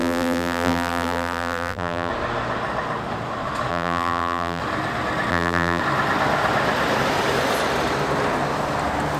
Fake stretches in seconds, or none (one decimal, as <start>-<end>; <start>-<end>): 0.0-2.1; 3.7-4.6; 5.3-5.8